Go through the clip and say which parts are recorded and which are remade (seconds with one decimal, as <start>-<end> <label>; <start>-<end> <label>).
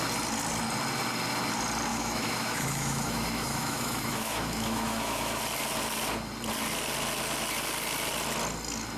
0.0-1.9 recorded; 1.9-5.4 remade; 5.4-9.0 recorded